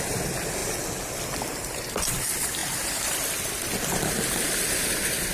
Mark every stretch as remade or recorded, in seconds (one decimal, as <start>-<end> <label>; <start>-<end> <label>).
0.0-0.6 recorded; 0.6-1.9 remade; 1.9-2.6 recorded; 2.6-3.3 remade; 3.3-5.3 recorded